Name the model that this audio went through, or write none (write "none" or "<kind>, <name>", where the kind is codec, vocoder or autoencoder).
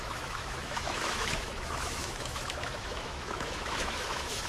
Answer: autoencoder, DAC-VAE